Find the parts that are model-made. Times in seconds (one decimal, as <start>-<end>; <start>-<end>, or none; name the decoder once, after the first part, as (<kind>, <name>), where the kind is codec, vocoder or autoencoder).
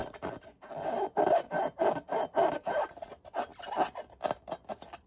0.0-3.1 (vocoder, BigVGAN v2)